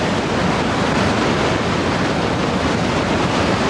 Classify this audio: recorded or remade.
recorded